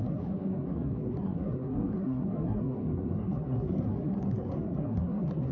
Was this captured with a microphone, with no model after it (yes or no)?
no